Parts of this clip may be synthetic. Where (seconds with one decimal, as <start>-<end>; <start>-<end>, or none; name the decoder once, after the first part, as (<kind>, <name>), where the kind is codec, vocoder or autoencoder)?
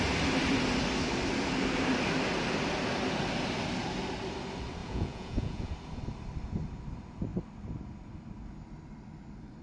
4.8-5.7 (vocoder, Vocos)